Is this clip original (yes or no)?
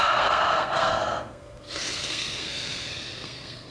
no